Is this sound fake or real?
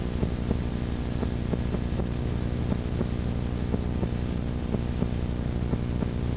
real